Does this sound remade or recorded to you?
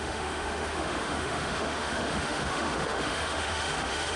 remade